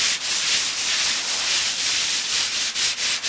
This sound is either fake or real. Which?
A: real